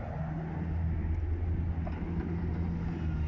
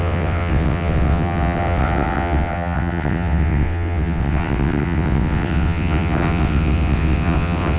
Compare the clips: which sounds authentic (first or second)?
first